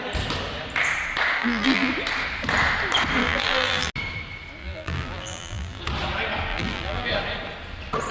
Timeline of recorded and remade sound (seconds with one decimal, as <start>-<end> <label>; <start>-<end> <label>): 0.0-1.4 recorded; 1.4-1.9 remade; 1.9-3.2 recorded; 3.2-3.9 remade; 3.9-4.6 recorded; 4.6-5.8 remade; 5.8-6.5 recorded; 6.5-7.1 remade; 7.1-8.1 recorded